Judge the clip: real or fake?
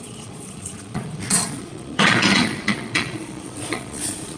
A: fake